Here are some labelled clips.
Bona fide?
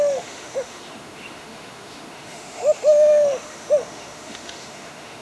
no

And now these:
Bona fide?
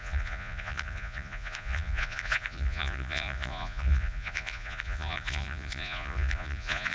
no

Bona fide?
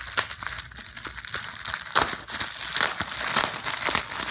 yes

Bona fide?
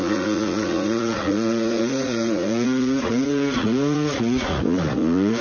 no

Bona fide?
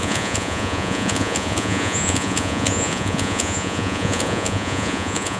no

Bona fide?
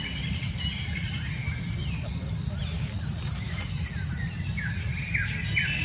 yes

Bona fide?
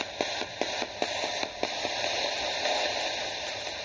yes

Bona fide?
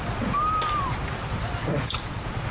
yes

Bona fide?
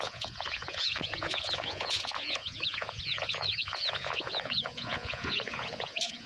no